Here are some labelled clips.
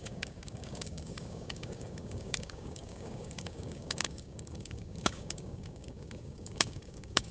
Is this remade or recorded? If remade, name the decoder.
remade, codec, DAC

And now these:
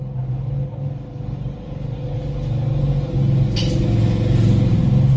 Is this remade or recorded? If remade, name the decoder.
recorded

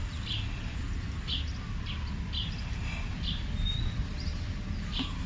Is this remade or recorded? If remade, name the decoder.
recorded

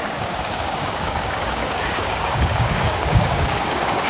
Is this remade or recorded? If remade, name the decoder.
remade, codec, DAC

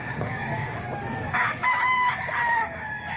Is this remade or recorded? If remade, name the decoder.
remade, codec, DAC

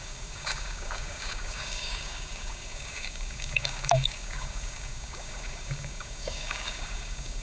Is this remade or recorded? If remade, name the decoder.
remade, codec, DAC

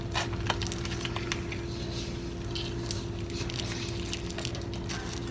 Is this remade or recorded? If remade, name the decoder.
recorded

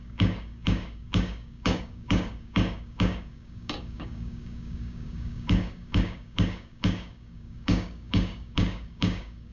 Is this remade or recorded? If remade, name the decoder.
remade, codec, DAC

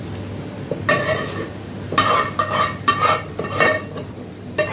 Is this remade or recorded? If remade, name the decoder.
recorded